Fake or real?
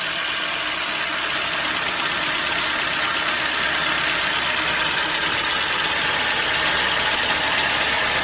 real